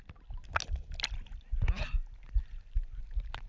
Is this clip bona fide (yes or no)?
yes